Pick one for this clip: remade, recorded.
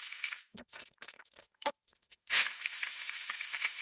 remade